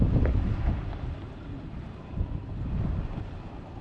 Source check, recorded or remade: recorded